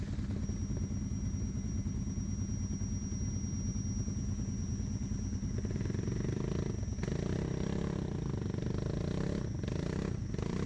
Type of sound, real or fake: real